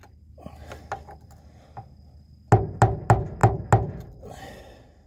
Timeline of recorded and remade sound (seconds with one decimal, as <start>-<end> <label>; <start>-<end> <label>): 0.0-5.1 recorded